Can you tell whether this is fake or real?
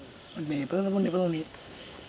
fake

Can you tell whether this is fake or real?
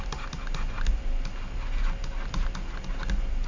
real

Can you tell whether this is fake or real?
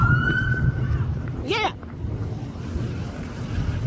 real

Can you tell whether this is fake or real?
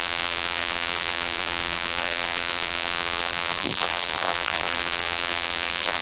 fake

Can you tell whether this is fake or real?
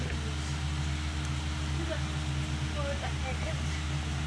real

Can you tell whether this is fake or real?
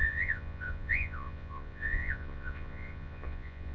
fake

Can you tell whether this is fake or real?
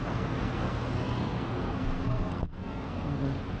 fake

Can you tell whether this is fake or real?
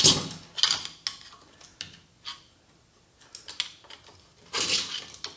real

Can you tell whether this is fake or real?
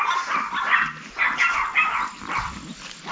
real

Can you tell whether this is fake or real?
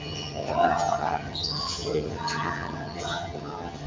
fake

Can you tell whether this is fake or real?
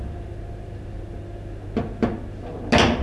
real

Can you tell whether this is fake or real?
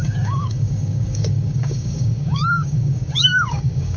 fake